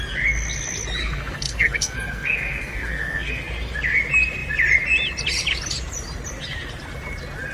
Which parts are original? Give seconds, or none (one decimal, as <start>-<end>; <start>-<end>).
0.0-1.0; 3.4-7.5